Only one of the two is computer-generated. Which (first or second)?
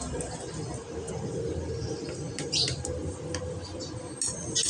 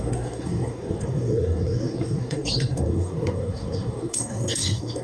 second